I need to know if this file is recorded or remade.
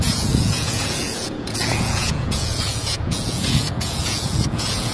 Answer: remade